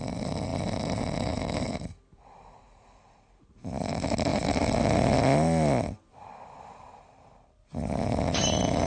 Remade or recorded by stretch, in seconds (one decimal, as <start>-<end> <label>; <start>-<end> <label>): 0.0-8.9 recorded